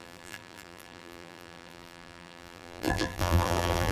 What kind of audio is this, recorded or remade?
remade